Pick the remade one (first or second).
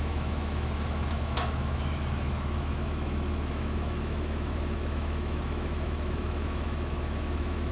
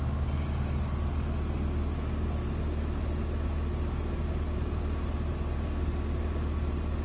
first